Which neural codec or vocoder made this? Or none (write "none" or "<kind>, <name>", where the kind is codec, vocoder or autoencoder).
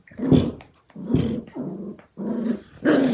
none